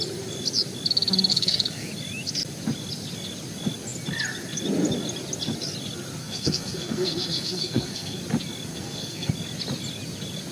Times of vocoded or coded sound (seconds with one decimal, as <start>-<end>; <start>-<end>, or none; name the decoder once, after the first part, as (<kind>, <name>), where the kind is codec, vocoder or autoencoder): 1.3-1.9 (codec, SNAC); 6.2-8.2; 8.7-9.3